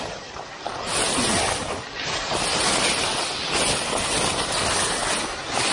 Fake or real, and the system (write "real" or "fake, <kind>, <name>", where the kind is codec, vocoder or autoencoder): real